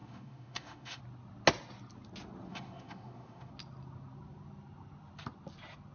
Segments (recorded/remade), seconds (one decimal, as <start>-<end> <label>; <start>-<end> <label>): 0.0-1.0 remade; 1.0-2.5 recorded; 2.5-3.5 remade; 3.5-5.9 recorded